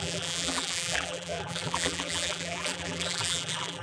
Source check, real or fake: fake